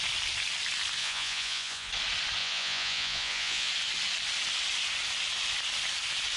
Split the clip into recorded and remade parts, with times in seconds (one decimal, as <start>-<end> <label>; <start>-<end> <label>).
0.0-1.0 recorded; 1.0-1.9 remade; 1.9-2.4 recorded; 2.4-3.7 remade; 3.7-6.4 recorded

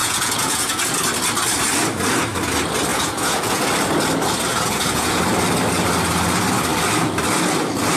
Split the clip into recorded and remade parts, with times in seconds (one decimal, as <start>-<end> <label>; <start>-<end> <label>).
0.0-0.8 remade; 0.8-2.9 recorded; 2.9-3.7 remade; 3.7-4.5 recorded; 4.5-5.2 remade; 5.2-8.0 recorded